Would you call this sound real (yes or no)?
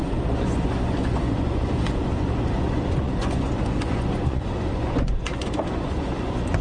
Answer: no